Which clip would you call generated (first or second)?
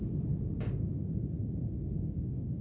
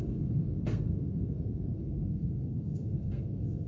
second